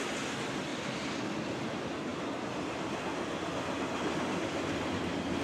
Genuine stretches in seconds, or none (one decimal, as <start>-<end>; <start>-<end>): 0.0-0.7; 1.2-5.4